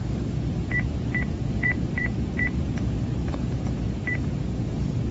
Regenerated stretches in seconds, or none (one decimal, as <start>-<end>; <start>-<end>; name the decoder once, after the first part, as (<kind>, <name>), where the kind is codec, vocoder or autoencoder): 0.0-5.1 (vocoder, Vocos)